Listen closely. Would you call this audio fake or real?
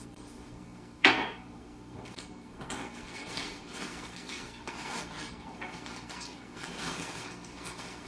fake